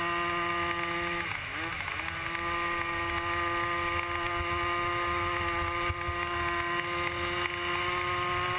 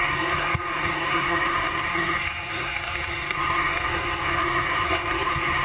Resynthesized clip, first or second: second